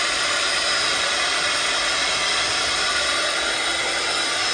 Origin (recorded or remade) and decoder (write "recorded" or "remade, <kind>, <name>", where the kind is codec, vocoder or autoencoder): recorded